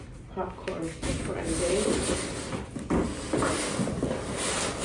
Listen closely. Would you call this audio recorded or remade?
recorded